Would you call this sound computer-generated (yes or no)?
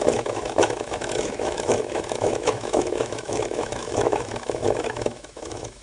yes